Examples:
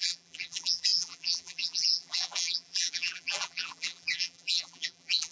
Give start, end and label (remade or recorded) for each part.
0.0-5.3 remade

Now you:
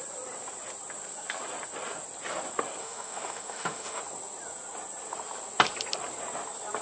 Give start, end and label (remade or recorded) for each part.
0.0-2.8 recorded; 2.8-4.0 remade; 4.0-6.8 recorded

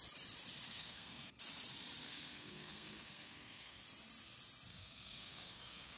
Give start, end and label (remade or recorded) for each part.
0.0-0.7 recorded; 0.7-1.3 remade; 1.3-2.0 recorded; 2.0-3.8 remade; 3.8-4.7 recorded; 4.7-6.0 remade